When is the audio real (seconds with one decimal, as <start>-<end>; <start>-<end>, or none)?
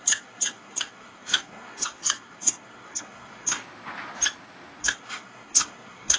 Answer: 3.6-4.8